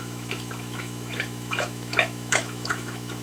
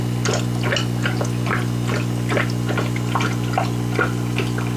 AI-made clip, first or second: first